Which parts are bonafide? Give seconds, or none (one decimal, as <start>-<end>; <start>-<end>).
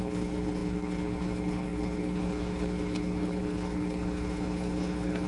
none